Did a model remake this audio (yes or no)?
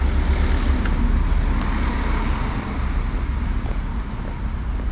no